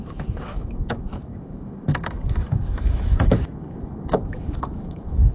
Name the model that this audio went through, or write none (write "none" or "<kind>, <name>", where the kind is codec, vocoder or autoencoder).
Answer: autoencoder, DAC-VAE